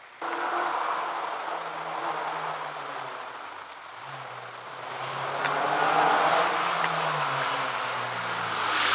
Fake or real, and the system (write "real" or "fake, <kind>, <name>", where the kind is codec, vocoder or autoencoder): real